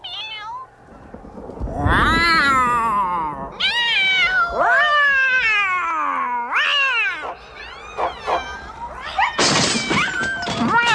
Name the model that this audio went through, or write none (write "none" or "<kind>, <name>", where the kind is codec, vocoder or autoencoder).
none